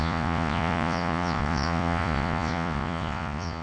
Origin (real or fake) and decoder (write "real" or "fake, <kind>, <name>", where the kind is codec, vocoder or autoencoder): fake, vocoder, Vocos